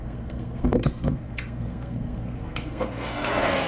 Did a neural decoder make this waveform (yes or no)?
yes